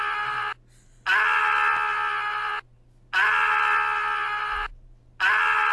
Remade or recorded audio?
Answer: recorded